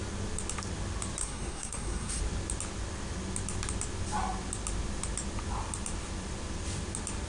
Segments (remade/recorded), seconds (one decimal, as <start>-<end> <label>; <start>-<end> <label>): 0.0-1.2 recorded; 1.2-2.2 remade; 2.2-7.3 recorded